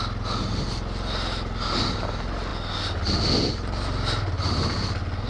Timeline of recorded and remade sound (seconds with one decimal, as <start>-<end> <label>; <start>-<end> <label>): 0.0-5.3 recorded